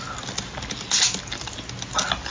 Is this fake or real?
real